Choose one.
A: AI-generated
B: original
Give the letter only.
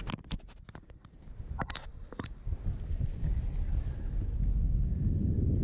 B